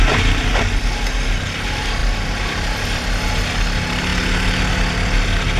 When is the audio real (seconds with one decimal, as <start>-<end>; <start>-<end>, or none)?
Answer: 0.0-5.6